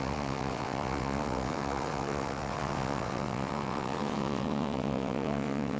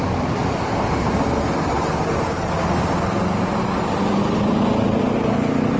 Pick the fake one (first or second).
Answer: first